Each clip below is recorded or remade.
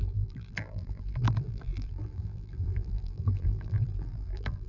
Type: remade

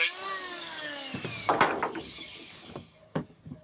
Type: remade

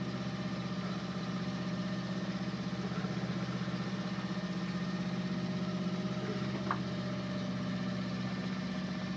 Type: recorded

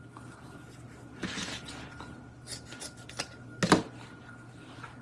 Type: recorded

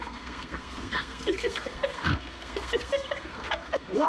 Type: remade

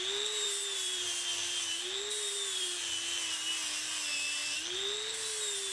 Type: remade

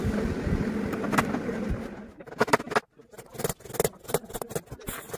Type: recorded